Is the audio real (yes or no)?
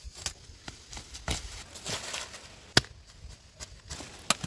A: yes